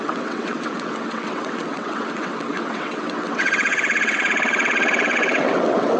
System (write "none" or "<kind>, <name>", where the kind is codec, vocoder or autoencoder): vocoder, WaveNeXt